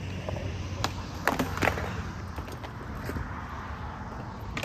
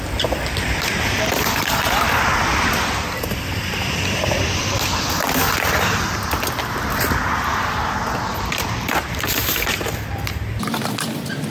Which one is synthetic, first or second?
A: second